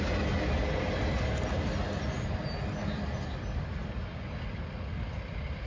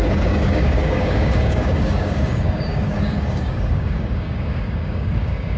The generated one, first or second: second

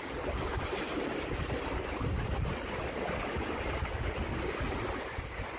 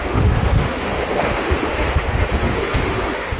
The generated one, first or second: second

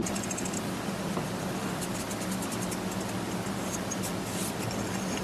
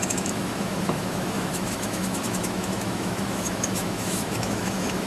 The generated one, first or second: second